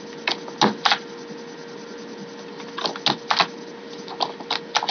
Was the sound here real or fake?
real